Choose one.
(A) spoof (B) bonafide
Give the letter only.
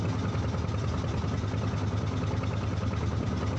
B